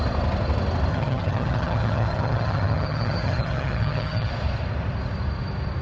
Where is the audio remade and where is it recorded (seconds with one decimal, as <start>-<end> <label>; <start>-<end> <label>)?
0.0-0.9 recorded; 0.9-4.3 remade; 4.3-5.8 recorded